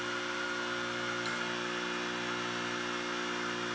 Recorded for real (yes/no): yes